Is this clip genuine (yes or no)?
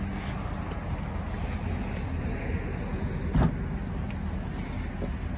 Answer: yes